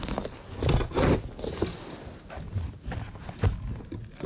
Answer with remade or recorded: recorded